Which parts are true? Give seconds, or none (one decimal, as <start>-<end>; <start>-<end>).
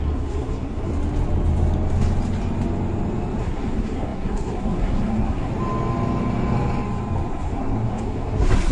0.9-3.4; 5.5-7.3